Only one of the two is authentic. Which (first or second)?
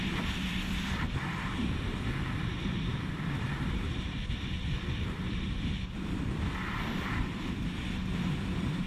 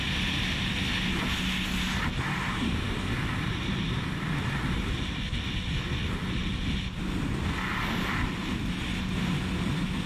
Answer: second